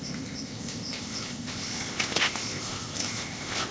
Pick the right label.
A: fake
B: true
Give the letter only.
A